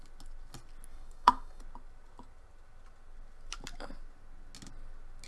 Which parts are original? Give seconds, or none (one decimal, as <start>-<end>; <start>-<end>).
0.0-0.9; 1.6-5.3